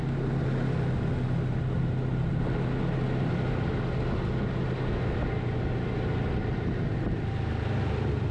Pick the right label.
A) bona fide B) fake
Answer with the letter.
A